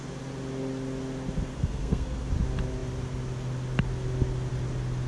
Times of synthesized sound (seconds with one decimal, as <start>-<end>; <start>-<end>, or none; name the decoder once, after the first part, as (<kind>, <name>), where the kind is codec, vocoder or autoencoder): 1.5-2.3 (codec, SNAC)